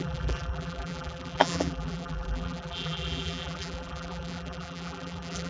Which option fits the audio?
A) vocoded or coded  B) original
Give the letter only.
A